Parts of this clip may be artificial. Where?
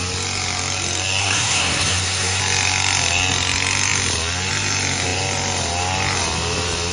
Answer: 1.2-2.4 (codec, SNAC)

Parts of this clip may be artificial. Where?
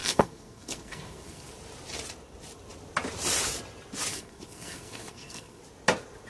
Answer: 0.0-1.5 (codec, SNAC); 4.1-5.6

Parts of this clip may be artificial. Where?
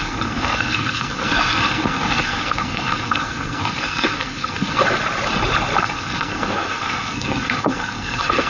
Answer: 0.0-4.8 (codec, SNAC); 5.8-8.5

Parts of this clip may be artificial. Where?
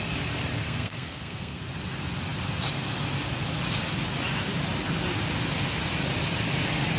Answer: 0.6-1.6 (codec, SNAC)